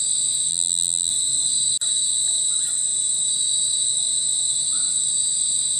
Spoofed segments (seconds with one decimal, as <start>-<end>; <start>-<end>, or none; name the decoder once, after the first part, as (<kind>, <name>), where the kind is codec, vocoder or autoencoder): 0.5-1.1 (vocoder, BigVGAN v2)